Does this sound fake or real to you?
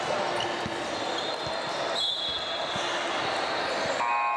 real